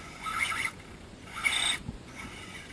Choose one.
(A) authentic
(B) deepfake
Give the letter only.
B